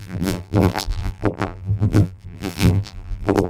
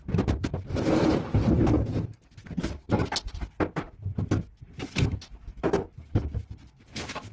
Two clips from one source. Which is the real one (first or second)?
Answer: second